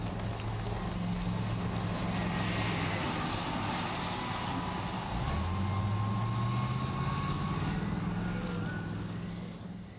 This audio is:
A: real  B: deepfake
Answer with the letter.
A